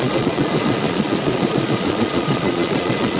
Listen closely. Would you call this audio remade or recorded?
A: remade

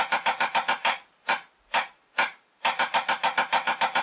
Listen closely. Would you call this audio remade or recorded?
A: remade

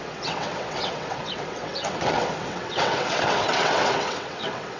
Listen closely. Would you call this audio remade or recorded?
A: remade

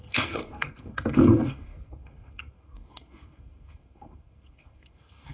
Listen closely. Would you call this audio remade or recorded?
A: remade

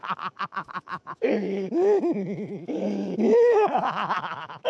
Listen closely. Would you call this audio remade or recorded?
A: remade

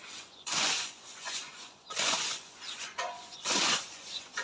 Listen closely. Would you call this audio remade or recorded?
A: remade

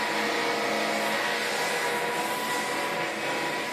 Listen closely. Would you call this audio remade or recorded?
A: recorded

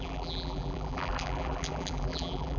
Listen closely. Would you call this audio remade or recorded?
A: remade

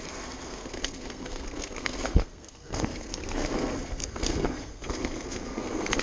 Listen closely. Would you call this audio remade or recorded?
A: remade